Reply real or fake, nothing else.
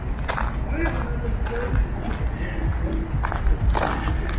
real